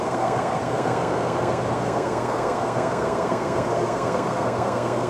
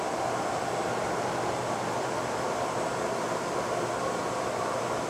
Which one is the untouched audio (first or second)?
second